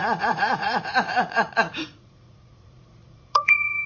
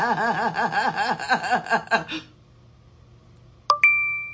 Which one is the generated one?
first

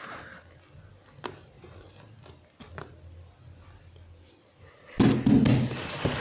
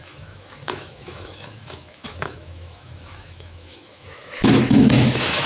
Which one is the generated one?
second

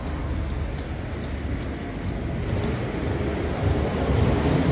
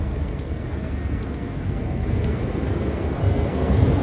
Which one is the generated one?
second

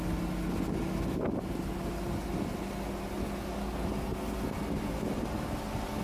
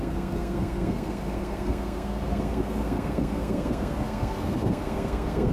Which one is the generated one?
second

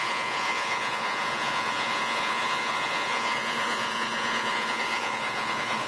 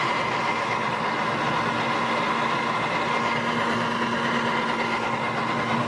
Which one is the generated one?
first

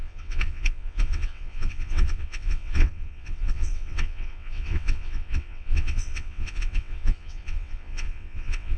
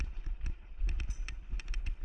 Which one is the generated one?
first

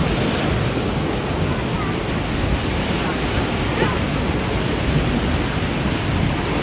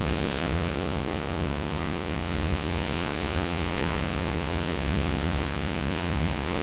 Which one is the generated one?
second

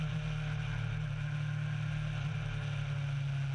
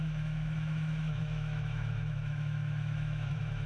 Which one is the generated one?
second